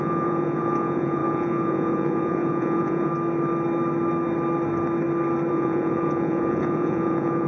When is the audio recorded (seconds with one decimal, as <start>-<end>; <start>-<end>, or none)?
3.1-5.5